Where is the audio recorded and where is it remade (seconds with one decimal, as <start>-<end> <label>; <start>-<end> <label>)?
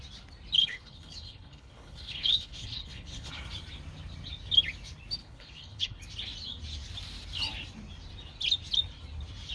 0.0-0.6 recorded; 0.6-3.3 remade; 3.3-5.2 recorded; 5.2-6.0 remade; 6.0-9.5 recorded